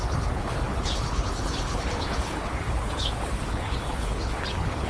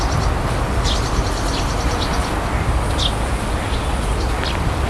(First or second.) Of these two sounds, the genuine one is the second